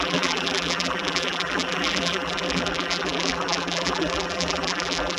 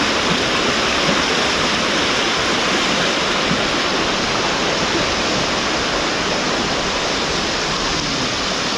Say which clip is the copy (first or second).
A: first